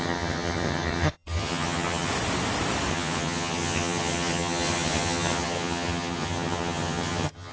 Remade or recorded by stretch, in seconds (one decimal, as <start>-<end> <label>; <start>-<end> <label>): 0.0-2.1 remade; 2.1-2.9 recorded; 2.9-7.5 remade